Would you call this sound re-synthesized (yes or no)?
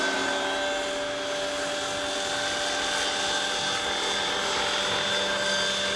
no